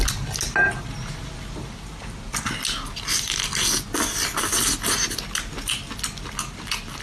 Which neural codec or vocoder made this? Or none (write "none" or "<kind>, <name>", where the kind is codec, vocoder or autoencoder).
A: none